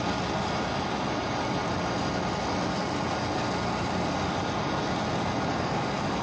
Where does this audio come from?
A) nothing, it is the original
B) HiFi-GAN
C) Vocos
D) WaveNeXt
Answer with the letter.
A